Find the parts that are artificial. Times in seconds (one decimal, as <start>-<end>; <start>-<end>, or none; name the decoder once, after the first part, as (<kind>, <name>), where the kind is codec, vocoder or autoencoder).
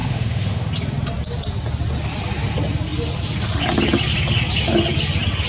0.0-0.7 (autoencoder, DAC-VAE)